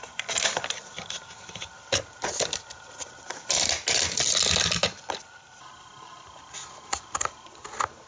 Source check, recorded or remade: recorded